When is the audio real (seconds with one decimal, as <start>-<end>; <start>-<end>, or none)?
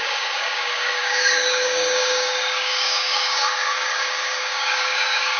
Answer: none